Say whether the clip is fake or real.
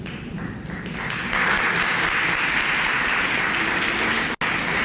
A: real